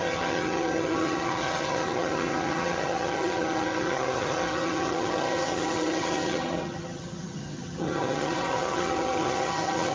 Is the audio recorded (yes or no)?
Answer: no